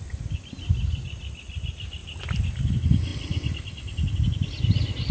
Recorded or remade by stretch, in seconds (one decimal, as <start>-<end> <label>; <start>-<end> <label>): 0.0-5.1 recorded